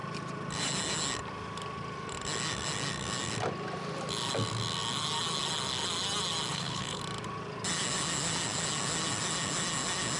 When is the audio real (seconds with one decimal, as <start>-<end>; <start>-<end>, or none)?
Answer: 0.0-6.5; 7.0-10.2